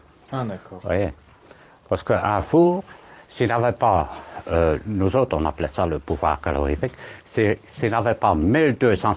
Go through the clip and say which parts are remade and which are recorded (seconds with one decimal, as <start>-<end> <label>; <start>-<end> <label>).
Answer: 0.0-1.3 recorded; 1.3-3.4 remade; 3.4-9.2 recorded